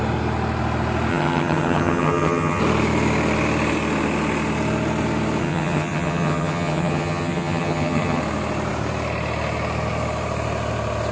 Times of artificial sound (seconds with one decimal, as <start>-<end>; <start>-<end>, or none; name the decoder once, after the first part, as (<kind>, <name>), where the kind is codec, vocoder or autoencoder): 1.1-2.6 (vocoder, HiFi-GAN); 5.4-8.2